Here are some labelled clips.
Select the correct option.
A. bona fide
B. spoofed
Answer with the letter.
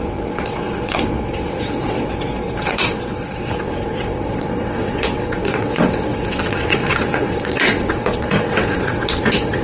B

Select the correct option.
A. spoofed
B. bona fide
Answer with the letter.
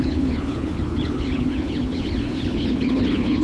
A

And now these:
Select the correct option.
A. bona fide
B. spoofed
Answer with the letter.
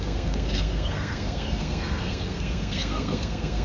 B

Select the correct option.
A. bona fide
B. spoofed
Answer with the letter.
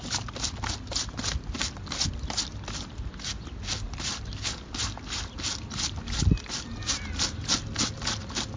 A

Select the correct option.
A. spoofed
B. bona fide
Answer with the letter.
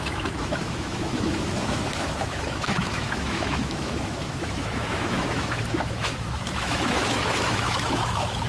A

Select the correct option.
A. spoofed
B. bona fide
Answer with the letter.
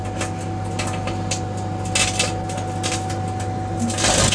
B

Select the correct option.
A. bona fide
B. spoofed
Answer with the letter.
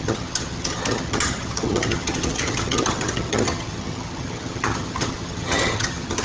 B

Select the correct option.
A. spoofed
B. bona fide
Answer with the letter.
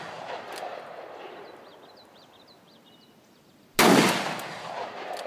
B